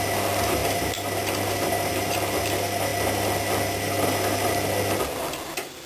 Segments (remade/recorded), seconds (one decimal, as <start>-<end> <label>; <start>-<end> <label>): 0.0-5.9 remade